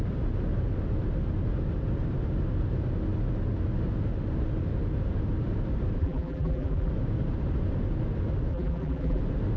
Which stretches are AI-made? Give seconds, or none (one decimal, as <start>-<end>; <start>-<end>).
6.0-6.9; 8.5-9.2